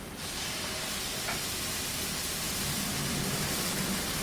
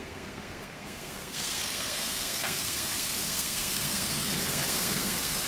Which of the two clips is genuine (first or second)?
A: first